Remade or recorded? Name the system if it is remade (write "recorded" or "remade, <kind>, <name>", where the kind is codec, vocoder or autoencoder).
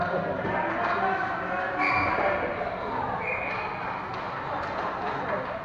recorded